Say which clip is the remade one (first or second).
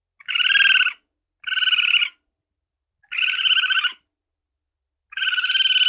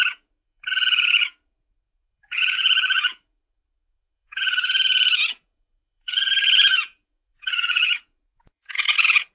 second